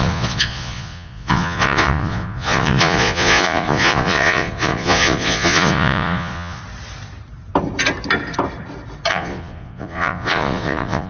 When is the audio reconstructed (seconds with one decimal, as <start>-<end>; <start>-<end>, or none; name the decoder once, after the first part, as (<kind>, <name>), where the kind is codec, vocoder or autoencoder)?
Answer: 0.0-6.6 (vocoder, Vocos); 9.1-11.1